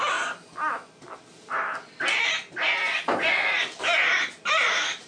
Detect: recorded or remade recorded